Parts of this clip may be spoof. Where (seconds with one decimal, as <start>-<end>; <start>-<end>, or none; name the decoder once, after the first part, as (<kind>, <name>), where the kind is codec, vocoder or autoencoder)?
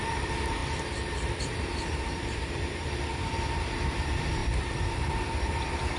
0.0-0.6 (vocoder, BigVGAN v2); 1.4-6.0